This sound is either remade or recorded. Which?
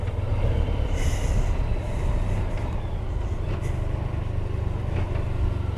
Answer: recorded